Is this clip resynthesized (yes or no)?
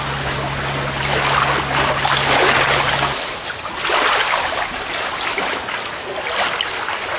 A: no